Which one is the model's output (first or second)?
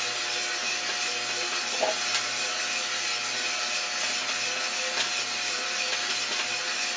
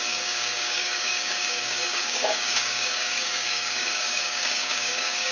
second